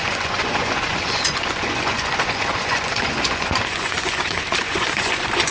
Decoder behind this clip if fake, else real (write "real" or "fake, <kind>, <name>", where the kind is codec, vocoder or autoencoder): fake, vocoder, Vocos